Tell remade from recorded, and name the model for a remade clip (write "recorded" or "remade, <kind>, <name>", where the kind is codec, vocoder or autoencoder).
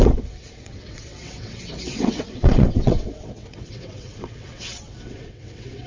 remade, vocoder, WaveNeXt